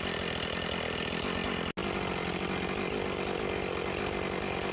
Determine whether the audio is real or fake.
real